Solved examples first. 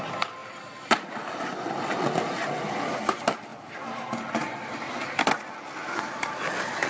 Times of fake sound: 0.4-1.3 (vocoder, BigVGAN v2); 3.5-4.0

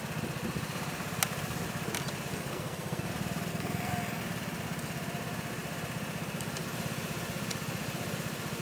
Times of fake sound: 2.3-3.1 (codec, SNAC); 3.5-4.2

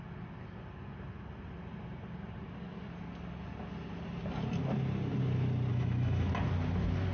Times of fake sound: 5.7-6.3 (autoencoder, DAC-VAE)

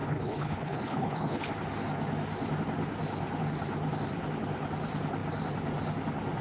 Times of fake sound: 0.0-1.4 (codec, HILCodec)

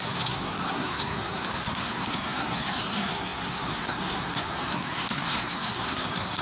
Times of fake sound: 0.0-6.4 (codec, SNAC)